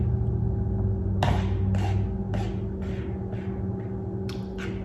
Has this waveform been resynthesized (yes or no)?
no